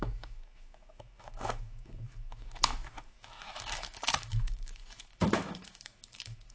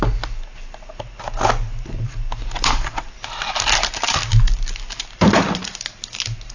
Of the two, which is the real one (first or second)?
second